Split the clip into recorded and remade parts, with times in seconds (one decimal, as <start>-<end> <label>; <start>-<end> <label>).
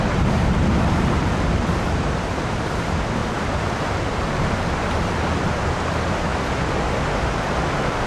0.0-6.3 remade; 6.3-6.9 recorded; 6.9-8.1 remade